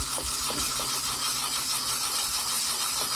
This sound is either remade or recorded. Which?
recorded